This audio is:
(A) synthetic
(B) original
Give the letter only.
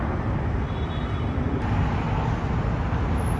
B